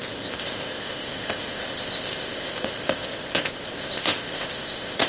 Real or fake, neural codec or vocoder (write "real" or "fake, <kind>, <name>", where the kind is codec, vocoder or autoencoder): fake, codec, ZipCodec